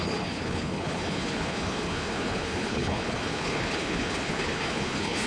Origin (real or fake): fake